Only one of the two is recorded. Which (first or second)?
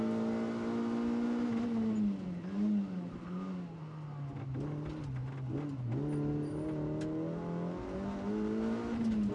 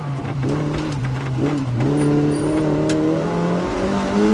first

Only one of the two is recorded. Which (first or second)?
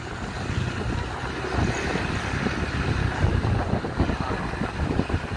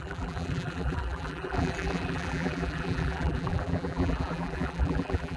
first